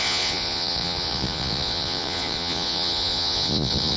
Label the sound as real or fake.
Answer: fake